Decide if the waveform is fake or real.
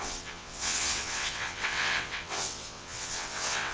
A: fake